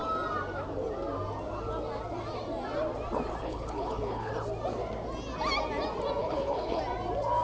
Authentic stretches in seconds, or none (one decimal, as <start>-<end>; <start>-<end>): 0.0-3.4; 4.3-6.2; 6.8-7.4